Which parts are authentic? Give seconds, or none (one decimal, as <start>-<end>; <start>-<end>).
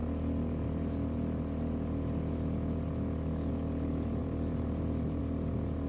0.0-4.2; 5.2-5.9